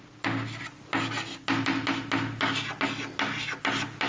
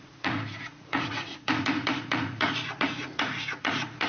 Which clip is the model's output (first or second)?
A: second